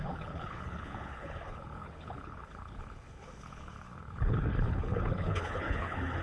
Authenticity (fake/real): fake